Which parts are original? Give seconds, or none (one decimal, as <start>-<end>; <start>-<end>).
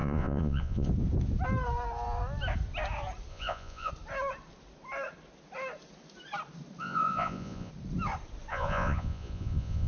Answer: 0.9-3.3; 3.9-6.8; 7.7-8.5